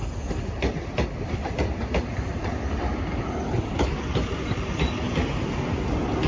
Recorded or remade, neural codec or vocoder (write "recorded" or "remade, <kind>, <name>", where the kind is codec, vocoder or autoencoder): recorded